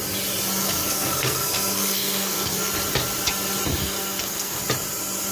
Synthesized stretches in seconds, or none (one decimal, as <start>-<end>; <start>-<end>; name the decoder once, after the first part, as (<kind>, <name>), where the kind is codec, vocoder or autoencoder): 0.6-2.7 (codec, SNAC); 3.8-4.6